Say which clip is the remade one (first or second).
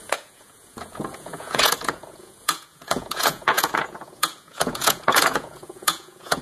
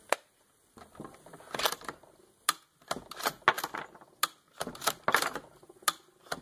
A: first